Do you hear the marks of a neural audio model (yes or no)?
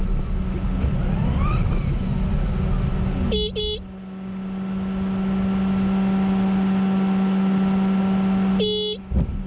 no